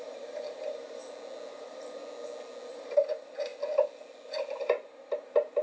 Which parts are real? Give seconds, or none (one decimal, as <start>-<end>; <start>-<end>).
1.0-1.5; 2.0-2.7; 3.5-4.8